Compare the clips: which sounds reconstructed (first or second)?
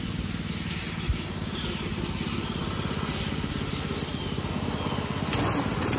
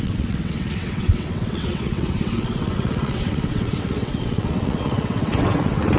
second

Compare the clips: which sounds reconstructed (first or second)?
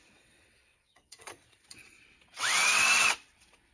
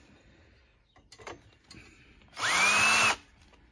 first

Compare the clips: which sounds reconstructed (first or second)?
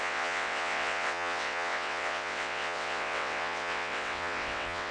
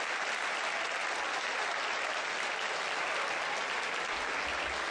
first